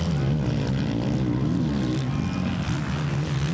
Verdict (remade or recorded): recorded